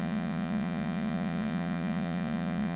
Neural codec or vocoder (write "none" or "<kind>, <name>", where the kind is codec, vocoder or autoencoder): vocoder, Vocos